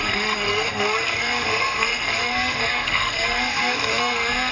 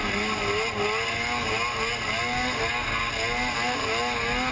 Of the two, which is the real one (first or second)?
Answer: second